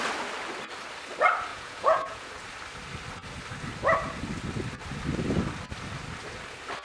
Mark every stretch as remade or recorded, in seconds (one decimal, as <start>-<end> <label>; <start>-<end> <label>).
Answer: 0.0-1.5 recorded; 1.5-2.3 remade; 2.3-6.8 recorded